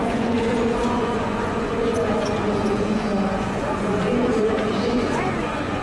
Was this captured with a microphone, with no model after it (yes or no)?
no